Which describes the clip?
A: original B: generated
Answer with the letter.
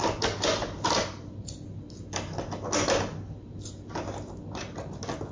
A